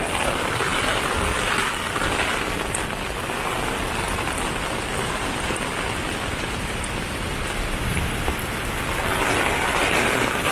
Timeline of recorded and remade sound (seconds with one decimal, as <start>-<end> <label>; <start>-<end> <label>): 0.0-10.5 recorded